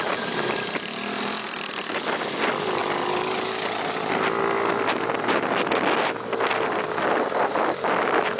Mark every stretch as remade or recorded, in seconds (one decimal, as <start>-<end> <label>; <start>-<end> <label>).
0.0-8.4 recorded